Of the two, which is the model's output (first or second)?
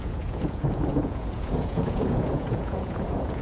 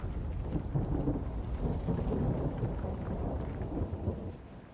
first